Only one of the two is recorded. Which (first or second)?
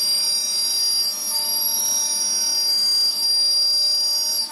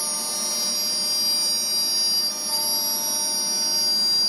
second